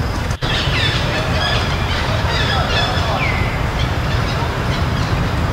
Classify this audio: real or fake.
fake